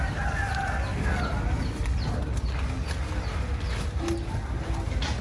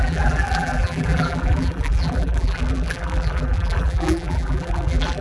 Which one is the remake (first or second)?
second